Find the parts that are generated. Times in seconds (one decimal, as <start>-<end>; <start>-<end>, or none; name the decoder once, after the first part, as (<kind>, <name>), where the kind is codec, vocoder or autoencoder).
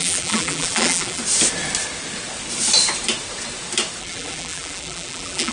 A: 0.0-1.2 (vocoder, BigVGAN v2); 4.0-5.5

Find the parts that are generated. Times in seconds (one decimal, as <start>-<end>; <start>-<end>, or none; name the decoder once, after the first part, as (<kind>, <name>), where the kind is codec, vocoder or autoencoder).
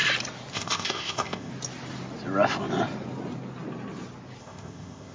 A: 0.5-1.5 (codec, ZipCodec); 4.4-5.1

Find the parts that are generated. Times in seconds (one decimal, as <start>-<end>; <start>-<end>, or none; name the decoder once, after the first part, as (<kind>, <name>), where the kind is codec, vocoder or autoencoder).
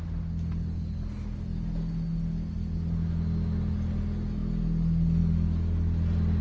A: none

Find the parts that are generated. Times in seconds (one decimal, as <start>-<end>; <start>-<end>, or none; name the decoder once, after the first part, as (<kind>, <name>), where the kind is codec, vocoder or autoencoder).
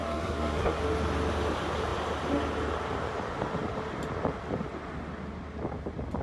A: 0.0-0.8 (codec, SNAC)